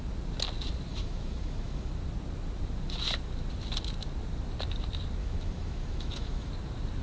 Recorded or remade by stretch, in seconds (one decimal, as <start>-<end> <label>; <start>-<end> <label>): 0.0-0.9 recorded; 0.9-1.9 remade; 1.9-5.2 recorded; 5.2-6.5 remade; 6.5-7.0 recorded